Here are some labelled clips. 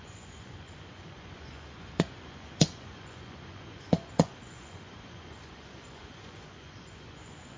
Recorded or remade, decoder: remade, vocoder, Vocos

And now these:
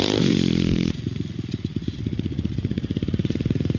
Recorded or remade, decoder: remade, vocoder, Vocos